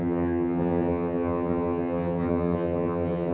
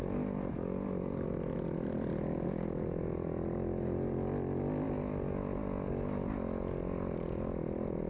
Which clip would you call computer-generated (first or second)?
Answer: first